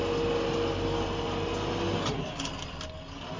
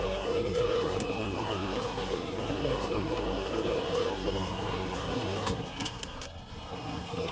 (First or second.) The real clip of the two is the first